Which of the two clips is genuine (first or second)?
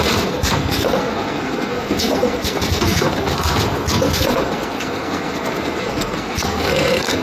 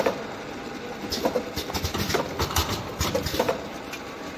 second